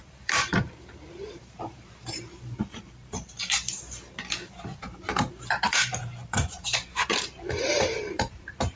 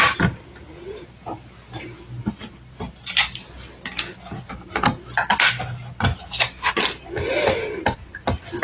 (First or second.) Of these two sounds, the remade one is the first